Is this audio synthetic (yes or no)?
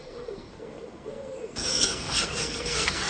yes